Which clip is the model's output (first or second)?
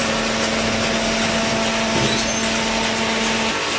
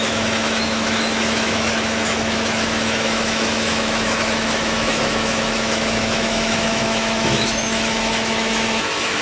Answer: second